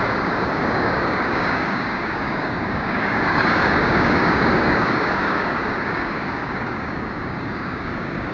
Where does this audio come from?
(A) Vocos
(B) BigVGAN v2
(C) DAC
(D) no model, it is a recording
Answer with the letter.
C